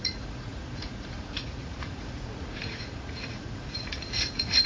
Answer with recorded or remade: remade